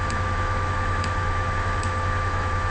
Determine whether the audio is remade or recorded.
remade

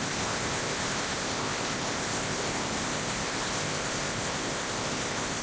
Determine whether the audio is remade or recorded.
remade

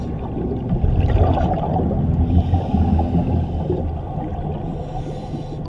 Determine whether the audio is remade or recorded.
recorded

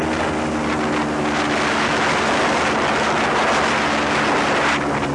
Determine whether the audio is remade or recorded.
recorded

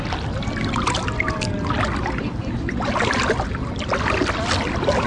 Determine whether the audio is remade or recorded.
recorded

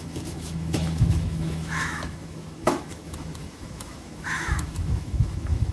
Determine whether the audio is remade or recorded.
remade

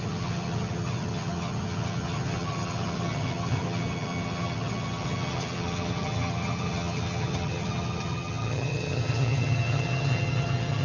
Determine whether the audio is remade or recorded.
remade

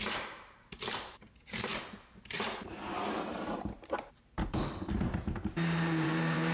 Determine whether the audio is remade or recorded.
remade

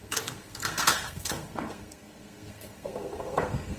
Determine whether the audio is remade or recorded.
remade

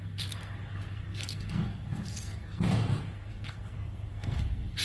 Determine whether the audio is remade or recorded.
remade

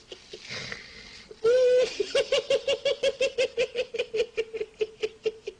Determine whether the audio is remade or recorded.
recorded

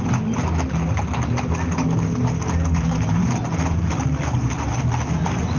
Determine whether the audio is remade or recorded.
recorded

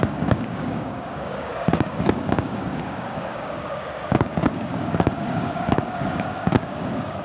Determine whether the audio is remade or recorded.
remade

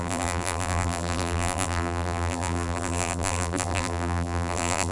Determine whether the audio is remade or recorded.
remade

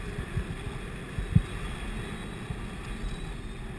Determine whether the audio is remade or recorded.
recorded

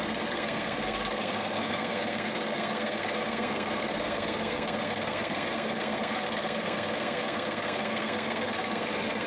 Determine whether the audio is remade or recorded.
remade